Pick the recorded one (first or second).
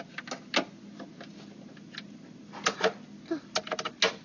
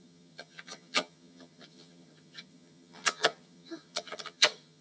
first